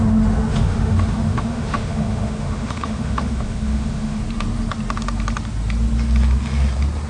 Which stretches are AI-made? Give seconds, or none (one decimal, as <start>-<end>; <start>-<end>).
0.5-4.2